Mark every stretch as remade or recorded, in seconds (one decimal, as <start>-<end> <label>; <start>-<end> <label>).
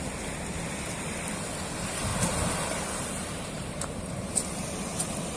0.0-2.1 recorded; 2.1-4.3 remade; 4.3-5.4 recorded